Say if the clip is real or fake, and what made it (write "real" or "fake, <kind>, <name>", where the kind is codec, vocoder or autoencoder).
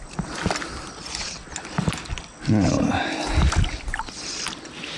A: real